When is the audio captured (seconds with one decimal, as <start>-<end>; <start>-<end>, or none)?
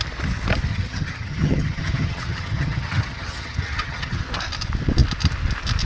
0.0-0.7; 4.2-5.9